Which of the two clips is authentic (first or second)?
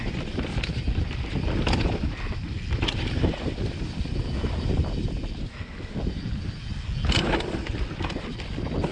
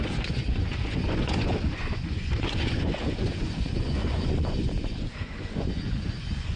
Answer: first